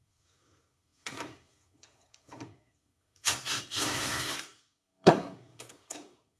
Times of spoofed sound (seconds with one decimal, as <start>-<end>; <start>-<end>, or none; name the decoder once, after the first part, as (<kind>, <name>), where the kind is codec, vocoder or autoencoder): 0.0-6.4 (codec, SNAC)